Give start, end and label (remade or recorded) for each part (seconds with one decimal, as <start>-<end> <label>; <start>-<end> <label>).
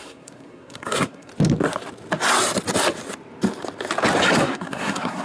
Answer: 0.0-1.3 remade; 1.3-4.4 recorded; 4.4-5.2 remade